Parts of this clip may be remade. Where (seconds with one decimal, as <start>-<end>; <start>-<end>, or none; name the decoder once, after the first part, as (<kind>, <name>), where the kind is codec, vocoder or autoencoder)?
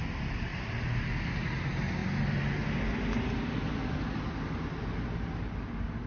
2.0-2.5 (vocoder, BigVGAN v2)